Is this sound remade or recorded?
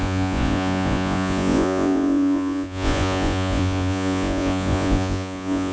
remade